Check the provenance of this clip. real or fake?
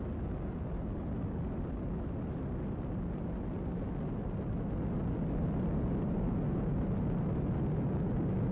real